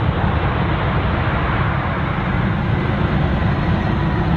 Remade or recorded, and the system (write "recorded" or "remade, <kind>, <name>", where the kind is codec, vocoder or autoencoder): recorded